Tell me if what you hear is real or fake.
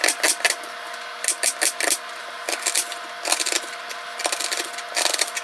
real